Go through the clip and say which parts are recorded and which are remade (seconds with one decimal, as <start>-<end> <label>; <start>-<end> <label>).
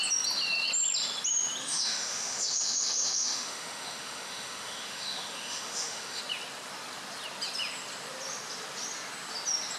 0.0-1.6 recorded; 1.6-6.2 remade; 6.2-9.8 recorded